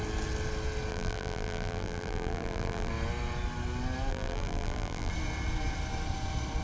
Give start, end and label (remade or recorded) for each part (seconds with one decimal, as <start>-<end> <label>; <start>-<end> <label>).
0.0-0.9 recorded; 0.9-2.9 remade; 2.9-4.1 recorded; 4.1-5.1 remade; 5.1-6.6 recorded